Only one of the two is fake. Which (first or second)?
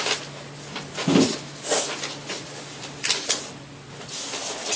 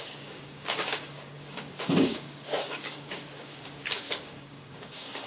second